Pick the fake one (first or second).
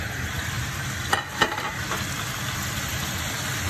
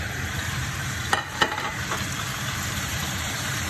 second